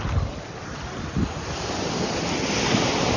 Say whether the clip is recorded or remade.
recorded